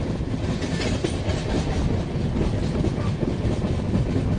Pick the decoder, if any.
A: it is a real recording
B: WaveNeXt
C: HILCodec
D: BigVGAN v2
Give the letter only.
A